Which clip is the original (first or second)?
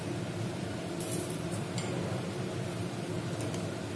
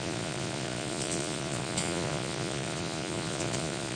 first